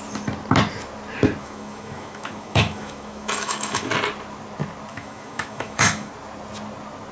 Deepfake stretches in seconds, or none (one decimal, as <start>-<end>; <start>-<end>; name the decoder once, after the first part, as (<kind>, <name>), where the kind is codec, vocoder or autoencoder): 1.4-3.9 (autoencoder, DAC-VAE); 4.9-6.1